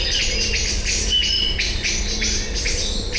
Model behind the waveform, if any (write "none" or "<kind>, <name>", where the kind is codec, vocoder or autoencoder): none